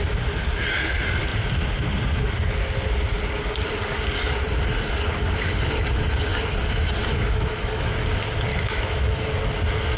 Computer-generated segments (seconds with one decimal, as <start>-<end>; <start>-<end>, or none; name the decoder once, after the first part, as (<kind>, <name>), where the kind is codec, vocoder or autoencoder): 7.0-7.9 (autoencoder, DAC-VAE); 8.5-9.3